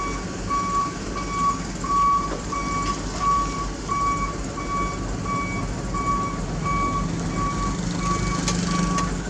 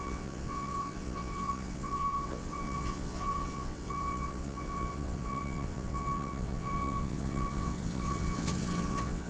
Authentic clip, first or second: first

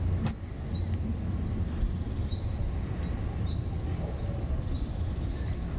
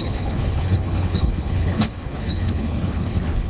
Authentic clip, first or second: first